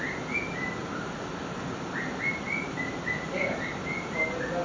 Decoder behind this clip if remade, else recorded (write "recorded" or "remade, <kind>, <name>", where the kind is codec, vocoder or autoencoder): recorded